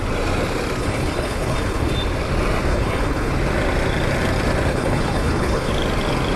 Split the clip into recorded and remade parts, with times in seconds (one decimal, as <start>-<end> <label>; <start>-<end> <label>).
0.0-0.8 recorded; 0.8-1.9 remade; 1.9-2.7 recorded; 2.7-3.3 remade; 3.3-4.7 recorded; 4.7-5.7 remade; 5.7-6.4 recorded